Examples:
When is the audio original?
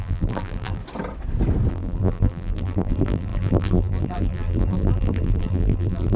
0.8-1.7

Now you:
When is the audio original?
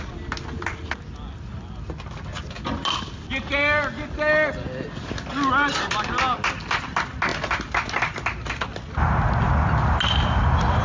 0.0-10.8